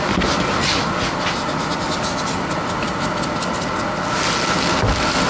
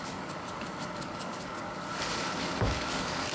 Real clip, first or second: first